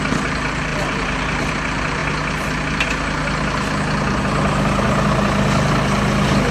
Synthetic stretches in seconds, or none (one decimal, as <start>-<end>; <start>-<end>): 0.7-1.5